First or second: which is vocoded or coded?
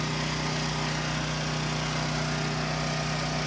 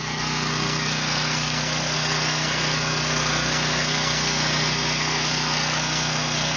second